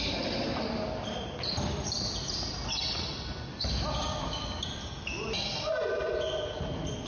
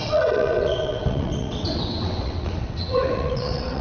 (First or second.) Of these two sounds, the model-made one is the second